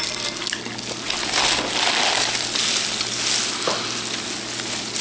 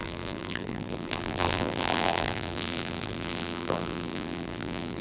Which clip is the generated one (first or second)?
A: second